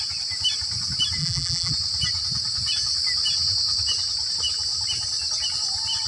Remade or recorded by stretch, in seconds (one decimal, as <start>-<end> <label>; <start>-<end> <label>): 0.0-1.2 recorded; 1.2-1.7 remade; 1.7-6.1 recorded